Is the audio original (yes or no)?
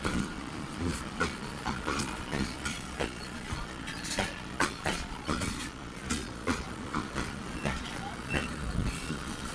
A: no